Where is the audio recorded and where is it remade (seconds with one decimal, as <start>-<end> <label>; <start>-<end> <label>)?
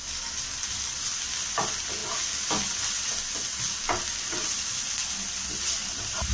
0.0-6.3 recorded